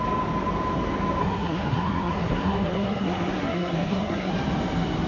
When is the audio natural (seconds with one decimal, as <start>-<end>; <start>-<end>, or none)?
0.0-1.2; 4.3-5.1